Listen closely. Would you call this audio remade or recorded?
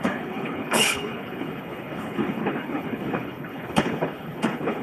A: remade